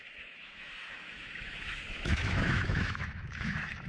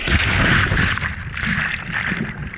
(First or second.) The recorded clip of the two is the second